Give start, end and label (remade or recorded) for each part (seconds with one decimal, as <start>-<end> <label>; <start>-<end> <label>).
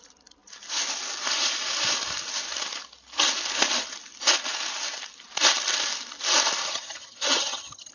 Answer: 0.0-6.6 recorded; 6.6-7.9 remade